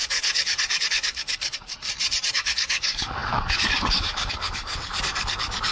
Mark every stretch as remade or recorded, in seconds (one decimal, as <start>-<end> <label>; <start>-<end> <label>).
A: 0.0-1.7 remade; 1.7-2.3 recorded; 2.3-5.7 remade